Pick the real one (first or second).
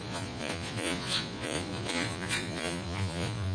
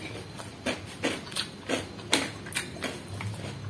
second